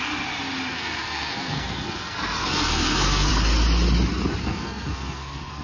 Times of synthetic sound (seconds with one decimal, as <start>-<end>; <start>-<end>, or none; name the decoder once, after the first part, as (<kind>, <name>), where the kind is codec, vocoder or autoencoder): 0.7-3.3 (codec, SNAC); 4.4-5.6